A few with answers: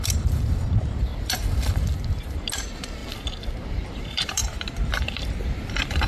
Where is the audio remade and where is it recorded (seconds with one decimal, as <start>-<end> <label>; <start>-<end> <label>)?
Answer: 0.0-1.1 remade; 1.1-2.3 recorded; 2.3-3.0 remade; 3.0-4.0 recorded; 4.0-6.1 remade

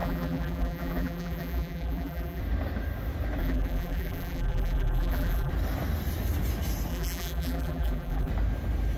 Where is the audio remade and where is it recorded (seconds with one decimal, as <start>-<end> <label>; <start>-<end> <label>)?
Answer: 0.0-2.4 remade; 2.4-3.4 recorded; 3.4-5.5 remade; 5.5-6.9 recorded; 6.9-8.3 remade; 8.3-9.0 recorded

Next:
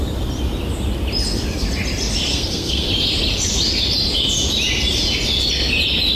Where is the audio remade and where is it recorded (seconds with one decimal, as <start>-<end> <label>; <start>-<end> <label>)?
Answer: 0.0-2.3 recorded; 2.3-2.9 remade; 2.9-6.2 recorded